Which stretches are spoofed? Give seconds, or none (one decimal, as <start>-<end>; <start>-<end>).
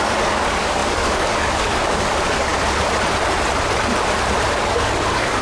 0.0-2.5; 4.6-5.4